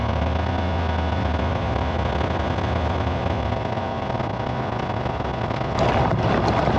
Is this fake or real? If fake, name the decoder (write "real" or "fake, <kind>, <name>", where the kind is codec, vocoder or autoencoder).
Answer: real